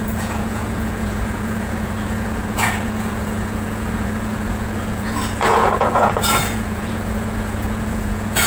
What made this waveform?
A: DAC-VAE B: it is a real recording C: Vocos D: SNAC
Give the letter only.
C